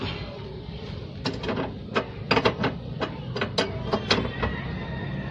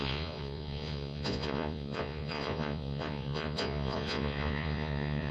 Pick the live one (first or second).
first